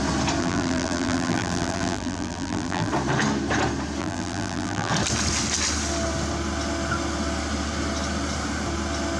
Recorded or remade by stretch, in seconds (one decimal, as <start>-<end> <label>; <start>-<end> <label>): 0.0-0.4 recorded; 0.4-2.9 remade; 2.9-4.0 recorded; 4.0-4.9 remade; 4.9-9.2 recorded